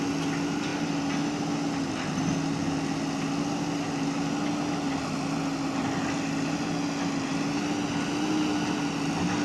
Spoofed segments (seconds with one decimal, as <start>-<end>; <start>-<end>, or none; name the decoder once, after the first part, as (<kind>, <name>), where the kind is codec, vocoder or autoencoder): none